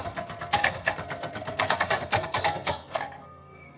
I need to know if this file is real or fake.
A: fake